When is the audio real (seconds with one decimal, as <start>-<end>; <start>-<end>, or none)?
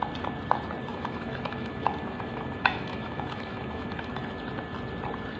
0.0-0.9; 4.1-5.4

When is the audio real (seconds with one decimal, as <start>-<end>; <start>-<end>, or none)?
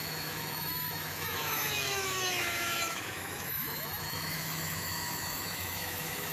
none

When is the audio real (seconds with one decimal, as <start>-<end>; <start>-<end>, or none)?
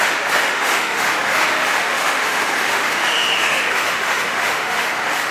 none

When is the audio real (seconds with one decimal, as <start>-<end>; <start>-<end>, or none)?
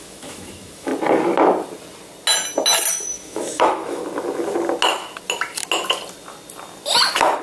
0.9-2.9; 4.0-7.4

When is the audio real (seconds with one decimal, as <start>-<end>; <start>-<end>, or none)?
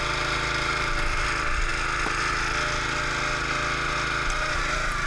0.0-5.1